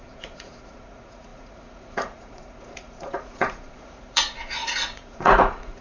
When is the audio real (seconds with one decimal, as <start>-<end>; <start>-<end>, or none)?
none